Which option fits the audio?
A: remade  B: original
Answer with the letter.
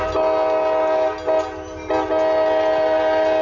B